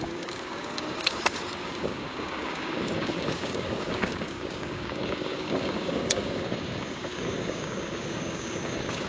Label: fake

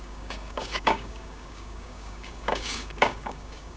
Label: fake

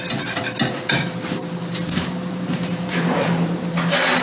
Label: real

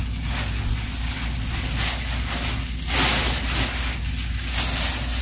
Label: real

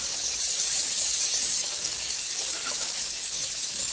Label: fake